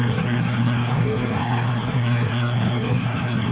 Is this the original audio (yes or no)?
no